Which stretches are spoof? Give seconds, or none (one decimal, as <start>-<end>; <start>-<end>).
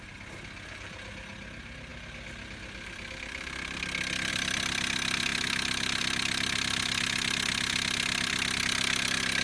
none